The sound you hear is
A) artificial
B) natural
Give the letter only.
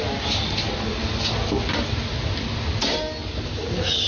B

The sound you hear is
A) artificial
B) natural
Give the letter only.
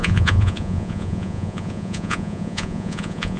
A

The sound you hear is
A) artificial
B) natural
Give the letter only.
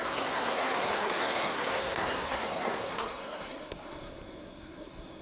A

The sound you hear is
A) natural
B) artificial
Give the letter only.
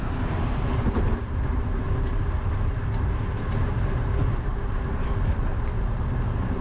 A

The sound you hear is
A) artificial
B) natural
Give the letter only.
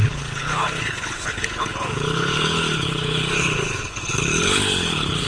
A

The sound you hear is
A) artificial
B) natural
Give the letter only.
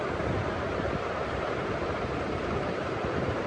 A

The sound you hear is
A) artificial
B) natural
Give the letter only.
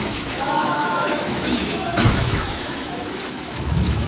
A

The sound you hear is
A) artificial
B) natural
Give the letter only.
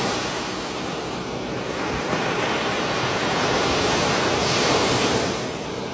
B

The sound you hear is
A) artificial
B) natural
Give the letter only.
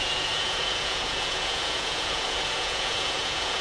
A